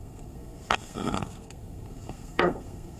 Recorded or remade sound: remade